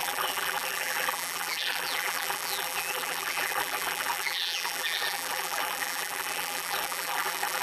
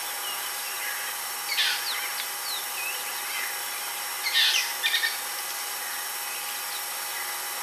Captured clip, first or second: second